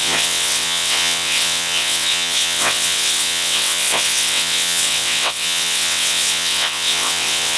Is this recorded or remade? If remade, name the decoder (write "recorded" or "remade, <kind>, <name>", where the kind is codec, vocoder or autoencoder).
remade, vocoder, WaveNeXt